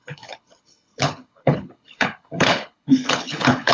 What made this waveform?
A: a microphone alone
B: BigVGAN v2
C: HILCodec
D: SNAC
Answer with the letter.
C